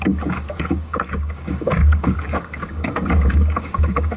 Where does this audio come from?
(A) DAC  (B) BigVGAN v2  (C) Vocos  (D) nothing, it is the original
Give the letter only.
A